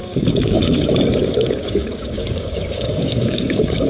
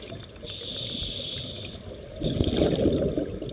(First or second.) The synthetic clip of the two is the first